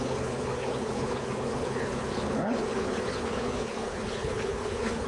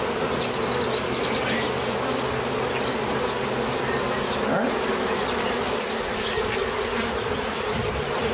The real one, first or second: second